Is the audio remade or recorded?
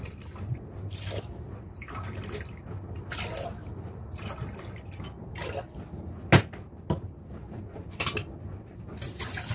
recorded